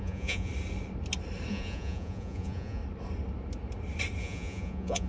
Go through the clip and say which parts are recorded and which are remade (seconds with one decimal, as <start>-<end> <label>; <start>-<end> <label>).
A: 0.0-0.5 remade; 0.5-1.5 recorded; 1.5-2.8 remade; 2.8-4.2 recorded; 4.2-5.1 remade